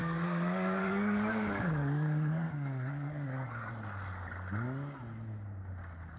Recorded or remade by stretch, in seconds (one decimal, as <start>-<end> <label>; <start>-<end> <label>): 0.0-3.7 remade; 3.7-6.2 recorded